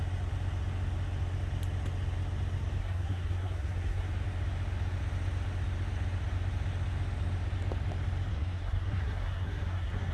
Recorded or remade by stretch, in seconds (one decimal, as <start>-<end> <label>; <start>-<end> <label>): 0.0-2.8 recorded; 2.8-4.1 remade; 4.1-8.3 recorded; 8.3-10.1 remade